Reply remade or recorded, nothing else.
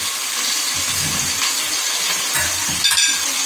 recorded